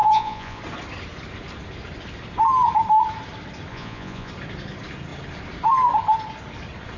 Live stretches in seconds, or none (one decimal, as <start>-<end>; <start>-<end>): 0.6-3.7; 4.3-7.0